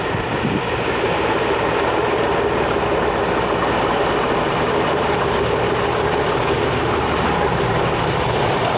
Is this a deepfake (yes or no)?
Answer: no